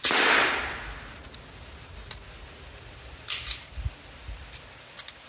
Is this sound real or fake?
real